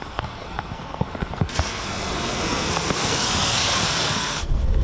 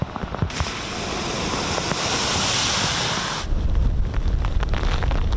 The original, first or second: second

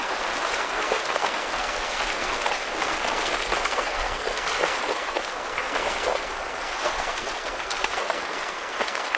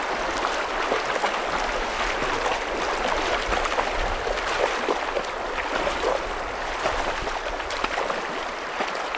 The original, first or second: second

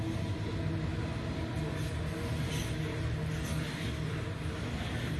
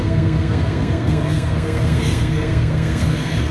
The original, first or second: first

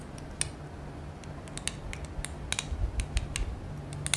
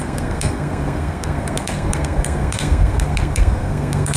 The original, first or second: first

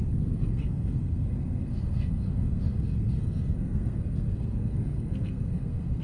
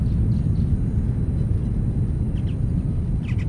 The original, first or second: second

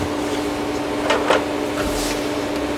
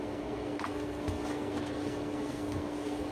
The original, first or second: first